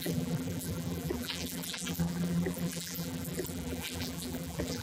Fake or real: fake